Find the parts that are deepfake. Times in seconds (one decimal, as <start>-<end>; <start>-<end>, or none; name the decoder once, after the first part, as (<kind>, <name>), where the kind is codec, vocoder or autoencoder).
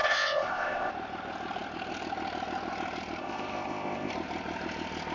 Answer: 0.0-0.9 (codec, ZipCodec); 3.2-4.1